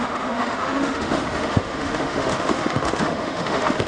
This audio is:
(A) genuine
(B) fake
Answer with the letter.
B